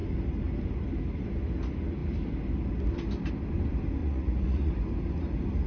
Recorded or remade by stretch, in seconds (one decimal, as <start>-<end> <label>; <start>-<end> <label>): 0.0-4.0 recorded; 4.0-4.7 remade; 4.7-5.7 recorded